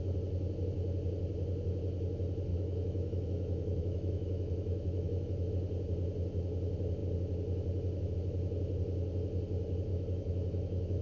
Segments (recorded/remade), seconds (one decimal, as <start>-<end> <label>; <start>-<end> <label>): 0.0-2.5 recorded; 2.5-5.5 remade; 5.5-9.9 recorded; 9.9-11.0 remade